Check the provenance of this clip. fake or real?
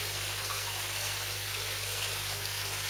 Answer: fake